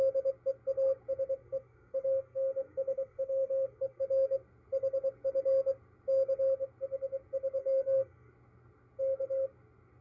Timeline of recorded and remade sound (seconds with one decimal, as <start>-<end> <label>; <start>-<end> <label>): 0.0-1.4 recorded; 1.4-4.0 remade; 4.0-7.6 recorded; 7.6-8.3 remade; 8.3-10.0 recorded

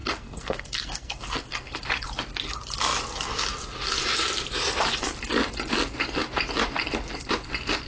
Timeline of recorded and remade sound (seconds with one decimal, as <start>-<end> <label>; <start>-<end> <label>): 0.0-1.8 remade; 1.8-7.9 recorded

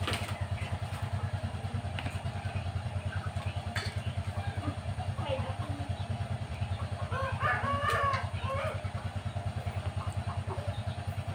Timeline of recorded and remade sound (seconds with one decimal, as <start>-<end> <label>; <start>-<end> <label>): 0.0-11.3 recorded